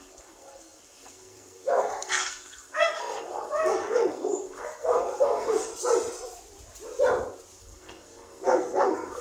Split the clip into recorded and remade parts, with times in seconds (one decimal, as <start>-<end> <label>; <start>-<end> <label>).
0.0-5.7 remade; 5.7-7.6 recorded; 7.6-9.2 remade

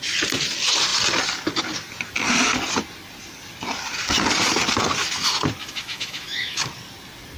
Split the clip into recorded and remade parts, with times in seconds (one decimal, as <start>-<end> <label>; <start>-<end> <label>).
0.0-5.6 recorded; 5.6-6.6 remade; 6.6-7.4 recorded

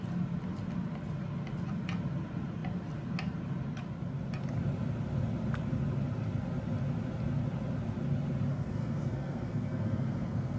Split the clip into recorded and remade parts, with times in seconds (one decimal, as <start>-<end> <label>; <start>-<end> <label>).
0.0-8.5 recorded; 8.5-10.6 remade

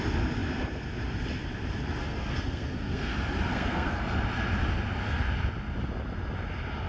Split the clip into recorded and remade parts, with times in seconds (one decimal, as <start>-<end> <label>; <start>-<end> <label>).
0.0-2.0 recorded; 2.0-3.1 remade; 3.1-3.5 recorded; 3.5-4.0 remade; 4.0-6.9 recorded

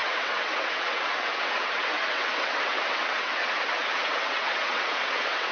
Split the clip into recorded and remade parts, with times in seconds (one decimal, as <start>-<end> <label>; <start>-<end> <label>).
0.0-5.5 remade